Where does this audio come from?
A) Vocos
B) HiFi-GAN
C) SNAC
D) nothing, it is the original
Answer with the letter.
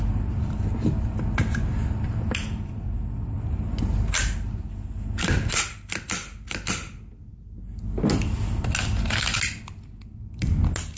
D